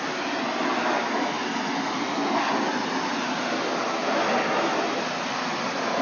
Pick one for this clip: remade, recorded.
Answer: recorded